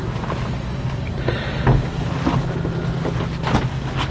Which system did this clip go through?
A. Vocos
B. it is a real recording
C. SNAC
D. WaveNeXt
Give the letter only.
B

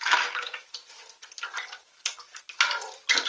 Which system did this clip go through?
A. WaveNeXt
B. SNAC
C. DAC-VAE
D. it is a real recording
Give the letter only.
D